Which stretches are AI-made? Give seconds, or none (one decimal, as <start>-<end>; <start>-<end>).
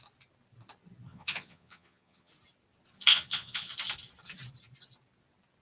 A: 1.1-2.3; 3.1-3.7